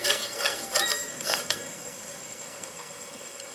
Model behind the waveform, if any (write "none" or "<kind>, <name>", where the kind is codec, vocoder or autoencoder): codec, SNAC